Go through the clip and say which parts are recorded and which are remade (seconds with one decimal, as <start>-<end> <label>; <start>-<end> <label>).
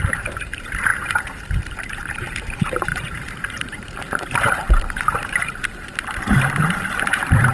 0.0-5.6 remade; 5.6-7.0 recorded; 7.0-7.5 remade